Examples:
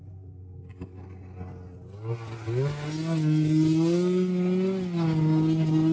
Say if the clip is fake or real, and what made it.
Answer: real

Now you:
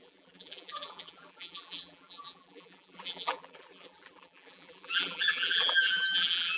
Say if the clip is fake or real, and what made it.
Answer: fake, vocoder, BigVGAN v2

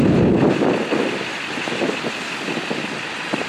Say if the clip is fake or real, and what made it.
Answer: real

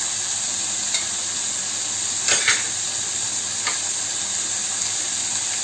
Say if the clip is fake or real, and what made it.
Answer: real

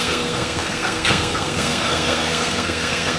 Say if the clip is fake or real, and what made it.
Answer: fake, codec, SNAC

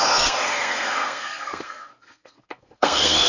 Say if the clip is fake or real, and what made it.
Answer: fake, codec, SNAC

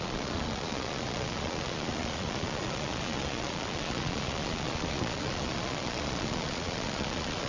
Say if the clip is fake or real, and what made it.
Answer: fake, vocoder, Vocos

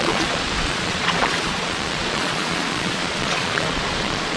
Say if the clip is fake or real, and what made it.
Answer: fake, vocoder, Vocos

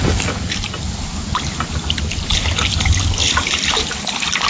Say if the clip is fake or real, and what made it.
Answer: real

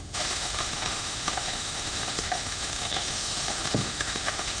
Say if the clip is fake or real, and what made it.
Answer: fake, autoencoder, DAC-VAE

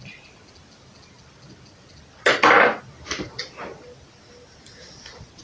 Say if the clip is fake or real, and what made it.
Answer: real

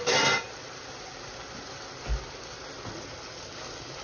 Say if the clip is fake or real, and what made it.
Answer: real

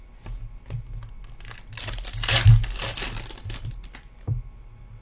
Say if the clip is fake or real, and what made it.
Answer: real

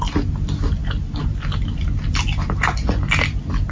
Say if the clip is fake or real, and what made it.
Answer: real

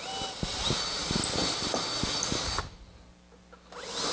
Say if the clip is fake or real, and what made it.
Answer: real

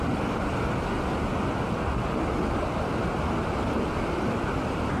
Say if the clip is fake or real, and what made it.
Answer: real